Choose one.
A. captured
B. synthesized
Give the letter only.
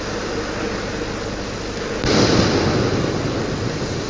A